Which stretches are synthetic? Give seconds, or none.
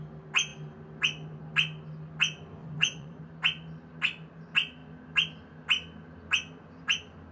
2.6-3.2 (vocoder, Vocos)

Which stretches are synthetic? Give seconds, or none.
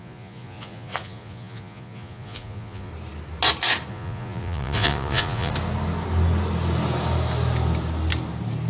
0.0-2.9 (vocoder, Vocos); 3.9-5.5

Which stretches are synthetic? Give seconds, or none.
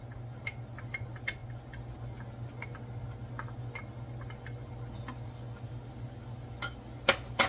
none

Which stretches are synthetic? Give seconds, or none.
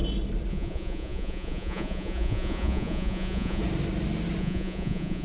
0.5-3.6 (vocoder, Vocos); 4.4-5.2